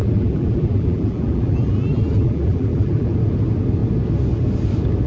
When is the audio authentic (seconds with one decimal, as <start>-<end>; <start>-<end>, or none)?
3.1-5.1